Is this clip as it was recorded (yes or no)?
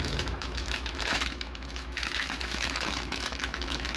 no